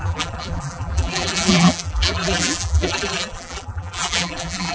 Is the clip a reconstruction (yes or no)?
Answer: yes